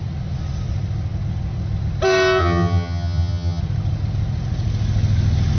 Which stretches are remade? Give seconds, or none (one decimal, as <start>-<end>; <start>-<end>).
2.4-3.6